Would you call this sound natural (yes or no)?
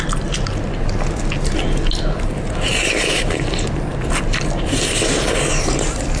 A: yes